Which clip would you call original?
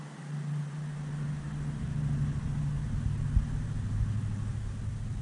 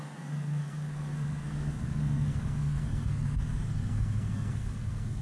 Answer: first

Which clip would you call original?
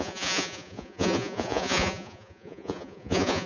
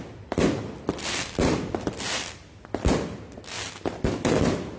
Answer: second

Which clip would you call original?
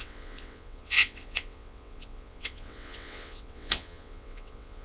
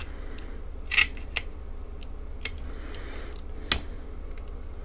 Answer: second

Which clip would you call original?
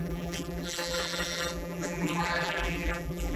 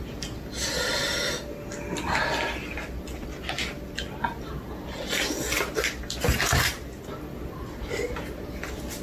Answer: second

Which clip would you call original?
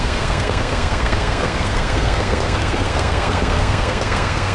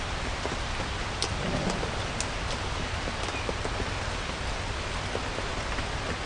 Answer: second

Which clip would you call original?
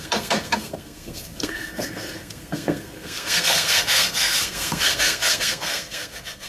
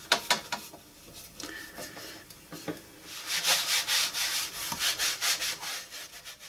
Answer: second